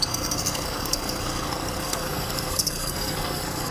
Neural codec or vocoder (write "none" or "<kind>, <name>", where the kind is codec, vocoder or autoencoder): codec, SNAC